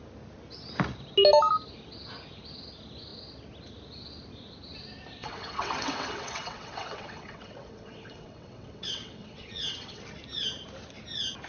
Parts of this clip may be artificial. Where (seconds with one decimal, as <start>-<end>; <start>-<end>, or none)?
5.2-10.0